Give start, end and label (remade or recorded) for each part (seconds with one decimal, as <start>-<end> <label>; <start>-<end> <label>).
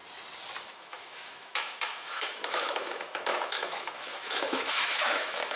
0.0-0.7 recorded; 0.7-5.6 remade